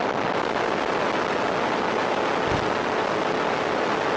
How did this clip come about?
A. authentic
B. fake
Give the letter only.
A